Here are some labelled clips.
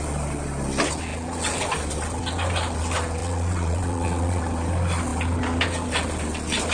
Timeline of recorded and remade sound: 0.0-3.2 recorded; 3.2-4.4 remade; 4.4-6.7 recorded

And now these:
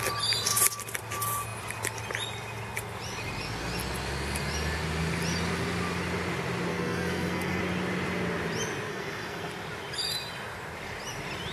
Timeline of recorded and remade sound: 0.0-6.7 recorded; 6.7-7.6 remade; 7.6-8.9 recorded; 8.9-9.5 remade; 9.5-11.5 recorded

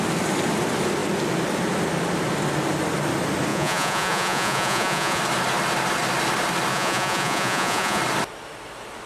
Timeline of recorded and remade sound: 0.0-3.5 recorded; 3.5-5.2 remade; 5.2-6.7 recorded; 6.7-8.0 remade; 8.0-9.1 recorded

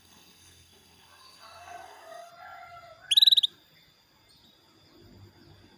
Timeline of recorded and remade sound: 0.0-2.3 remade; 2.3-5.8 recorded

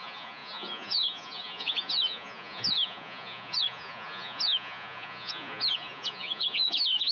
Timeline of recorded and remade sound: 0.0-7.1 remade